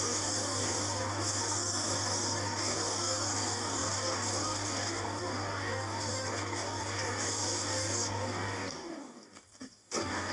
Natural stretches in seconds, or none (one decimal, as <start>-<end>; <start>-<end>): none